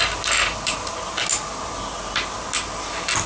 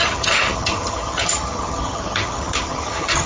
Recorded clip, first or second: first